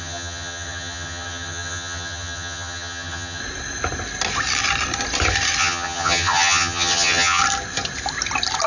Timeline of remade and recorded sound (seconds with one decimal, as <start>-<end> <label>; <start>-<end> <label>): 0.0-3.4 remade; 3.4-5.6 recorded; 5.6-7.4 remade; 7.4-8.7 recorded